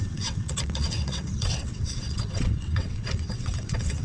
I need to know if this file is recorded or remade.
remade